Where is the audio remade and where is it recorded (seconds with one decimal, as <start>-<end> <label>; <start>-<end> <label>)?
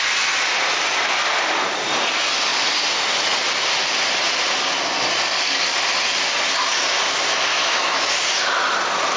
0.0-7.5 recorded; 7.5-8.1 remade; 8.1-9.2 recorded